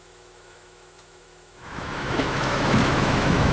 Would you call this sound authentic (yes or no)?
no